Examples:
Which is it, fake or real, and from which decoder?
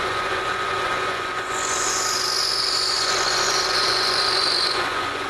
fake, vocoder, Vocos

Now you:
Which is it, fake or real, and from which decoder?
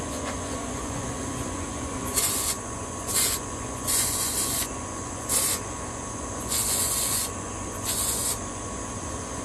fake, vocoder, Vocos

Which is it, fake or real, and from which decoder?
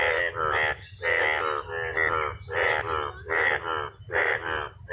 real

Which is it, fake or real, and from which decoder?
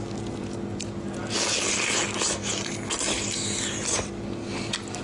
real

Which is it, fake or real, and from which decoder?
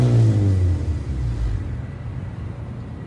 real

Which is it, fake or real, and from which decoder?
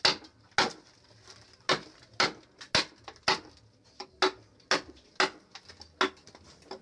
real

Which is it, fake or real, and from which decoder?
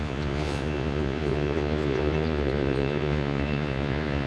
fake, vocoder, Vocos